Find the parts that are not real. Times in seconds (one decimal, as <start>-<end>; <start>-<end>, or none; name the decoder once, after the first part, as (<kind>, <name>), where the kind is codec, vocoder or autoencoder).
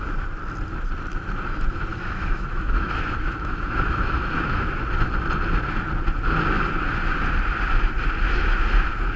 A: 1.9-4.8 (autoencoder, DAC-VAE)